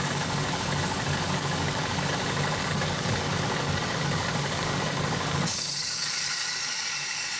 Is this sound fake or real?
fake